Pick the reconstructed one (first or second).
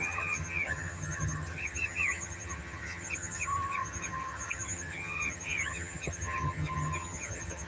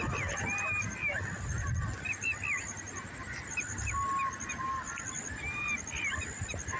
first